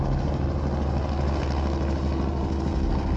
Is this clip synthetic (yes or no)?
no